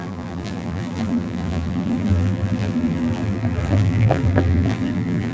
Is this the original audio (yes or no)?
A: no